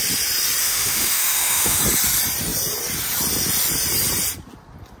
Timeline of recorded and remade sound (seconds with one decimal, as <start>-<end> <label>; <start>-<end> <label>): 0.0-0.6 recorded; 0.6-1.8 remade; 1.8-5.0 recorded